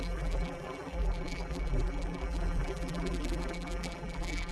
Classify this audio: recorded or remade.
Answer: remade